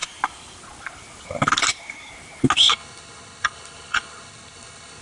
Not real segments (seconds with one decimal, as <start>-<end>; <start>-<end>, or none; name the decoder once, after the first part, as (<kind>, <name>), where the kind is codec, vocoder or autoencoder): 2.7-5.0 (codec, HILCodec)